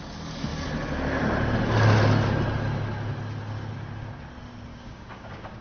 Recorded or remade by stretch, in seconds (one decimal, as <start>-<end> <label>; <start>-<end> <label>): 0.0-4.7 recorded; 4.7-5.6 remade